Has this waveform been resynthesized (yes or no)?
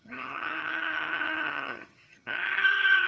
yes